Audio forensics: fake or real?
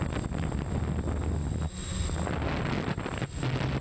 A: real